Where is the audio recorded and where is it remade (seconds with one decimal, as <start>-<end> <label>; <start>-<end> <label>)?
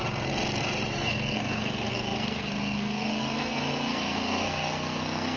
0.0-0.9 recorded; 0.9-5.4 remade